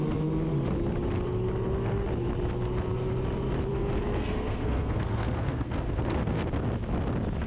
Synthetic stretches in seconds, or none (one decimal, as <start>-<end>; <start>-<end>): 4.2-6.5